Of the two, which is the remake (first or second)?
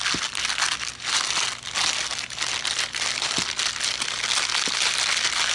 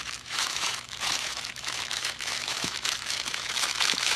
second